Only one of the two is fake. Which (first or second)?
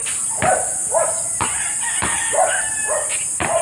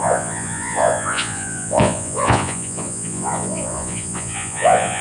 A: second